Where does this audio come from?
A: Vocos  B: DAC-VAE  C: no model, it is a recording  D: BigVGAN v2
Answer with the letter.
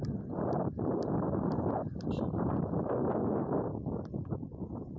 C